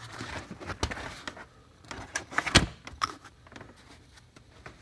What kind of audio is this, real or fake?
real